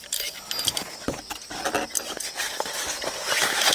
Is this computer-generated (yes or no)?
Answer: no